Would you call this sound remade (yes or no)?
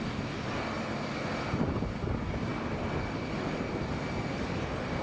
no